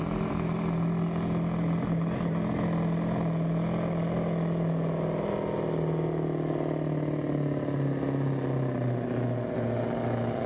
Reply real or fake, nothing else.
real